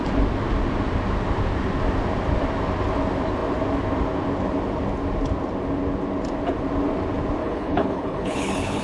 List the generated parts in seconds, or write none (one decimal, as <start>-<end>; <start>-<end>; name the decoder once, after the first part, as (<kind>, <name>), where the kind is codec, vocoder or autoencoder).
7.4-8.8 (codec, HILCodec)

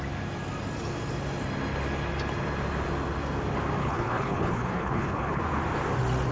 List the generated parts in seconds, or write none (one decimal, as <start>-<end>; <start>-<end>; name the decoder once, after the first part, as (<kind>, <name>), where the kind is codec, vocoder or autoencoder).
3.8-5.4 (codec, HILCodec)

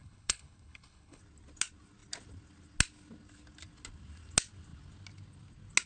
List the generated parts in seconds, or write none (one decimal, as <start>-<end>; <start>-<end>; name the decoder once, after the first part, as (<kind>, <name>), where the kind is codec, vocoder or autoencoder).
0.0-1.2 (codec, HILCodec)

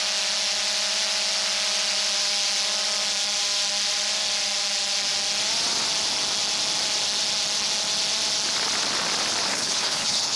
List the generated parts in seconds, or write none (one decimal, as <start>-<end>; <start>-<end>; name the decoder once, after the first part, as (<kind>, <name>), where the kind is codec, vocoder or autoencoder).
9.5-10.4 (codec, HILCodec)

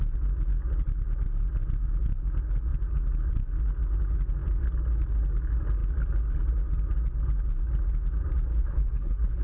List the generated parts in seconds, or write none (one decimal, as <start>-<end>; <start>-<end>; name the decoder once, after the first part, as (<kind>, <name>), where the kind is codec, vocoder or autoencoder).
8.5-9.4 (codec, HILCodec)

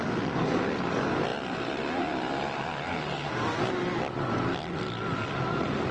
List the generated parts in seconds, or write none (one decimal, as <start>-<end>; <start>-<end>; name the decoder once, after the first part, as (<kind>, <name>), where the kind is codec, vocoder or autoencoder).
none

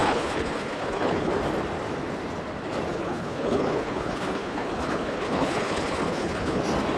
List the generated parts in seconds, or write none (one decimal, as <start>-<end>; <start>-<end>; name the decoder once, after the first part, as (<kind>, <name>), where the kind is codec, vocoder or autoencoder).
0.0-1.3 (codec, HILCodec); 2.9-6.6